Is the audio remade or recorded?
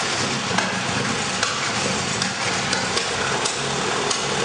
recorded